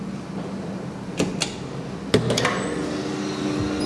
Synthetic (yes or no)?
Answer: no